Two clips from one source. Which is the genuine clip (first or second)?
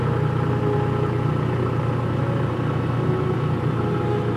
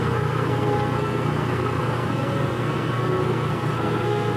first